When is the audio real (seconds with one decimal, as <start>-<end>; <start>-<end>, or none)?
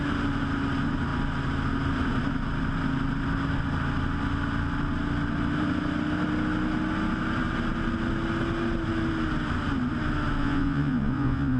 0.0-10.4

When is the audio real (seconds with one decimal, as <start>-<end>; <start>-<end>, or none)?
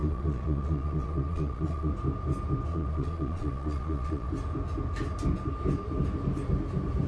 1.9-2.7; 4.3-7.1